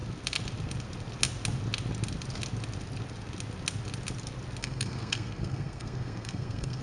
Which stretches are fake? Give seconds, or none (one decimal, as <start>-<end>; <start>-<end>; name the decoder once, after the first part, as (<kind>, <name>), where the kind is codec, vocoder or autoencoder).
4.6-6.8 (codec, SNAC)